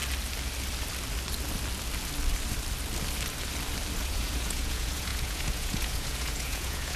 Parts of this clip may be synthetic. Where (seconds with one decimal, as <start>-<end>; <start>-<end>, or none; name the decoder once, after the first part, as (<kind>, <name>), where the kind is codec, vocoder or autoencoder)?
4.0-7.0 (vocoder, Vocos)